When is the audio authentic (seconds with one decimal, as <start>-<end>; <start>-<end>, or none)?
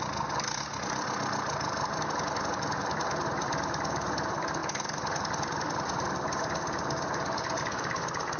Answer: 0.0-8.4